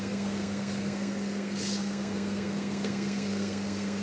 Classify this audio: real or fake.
fake